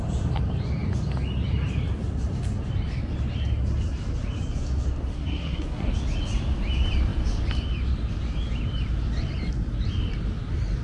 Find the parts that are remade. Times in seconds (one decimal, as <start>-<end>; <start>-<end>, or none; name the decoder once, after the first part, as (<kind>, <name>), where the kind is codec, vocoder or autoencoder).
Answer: 5.1-5.9 (codec, SNAC)

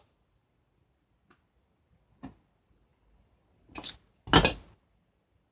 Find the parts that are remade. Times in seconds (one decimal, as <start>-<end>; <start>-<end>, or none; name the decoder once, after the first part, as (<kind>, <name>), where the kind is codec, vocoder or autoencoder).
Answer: none

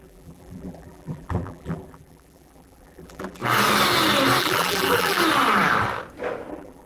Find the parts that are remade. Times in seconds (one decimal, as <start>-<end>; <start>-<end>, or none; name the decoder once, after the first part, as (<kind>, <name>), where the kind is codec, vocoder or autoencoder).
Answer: 0.0-3.4 (vocoder, BigVGAN v2); 4.4-5.2; 6.5-6.9

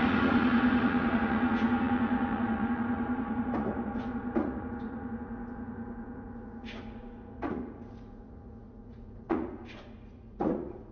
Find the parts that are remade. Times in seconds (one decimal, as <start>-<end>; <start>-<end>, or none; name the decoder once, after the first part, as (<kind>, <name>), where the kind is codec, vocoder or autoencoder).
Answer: 0.0-10.9 (vocoder, Vocos)